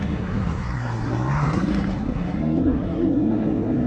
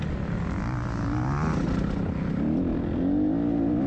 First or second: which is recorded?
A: second